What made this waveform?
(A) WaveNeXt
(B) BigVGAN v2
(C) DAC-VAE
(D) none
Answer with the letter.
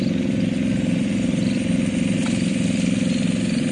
D